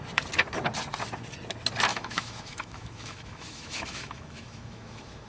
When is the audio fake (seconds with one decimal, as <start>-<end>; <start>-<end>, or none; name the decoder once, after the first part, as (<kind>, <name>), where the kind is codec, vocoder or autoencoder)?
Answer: 1.9-5.3 (autoencoder, DAC-VAE)